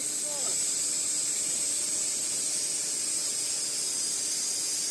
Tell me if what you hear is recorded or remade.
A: recorded